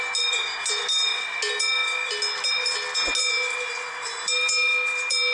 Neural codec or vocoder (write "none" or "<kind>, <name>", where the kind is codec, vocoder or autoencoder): none